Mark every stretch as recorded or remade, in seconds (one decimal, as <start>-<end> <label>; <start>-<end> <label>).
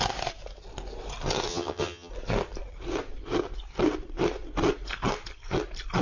0.0-1.5 recorded; 1.5-2.1 remade; 2.1-6.0 recorded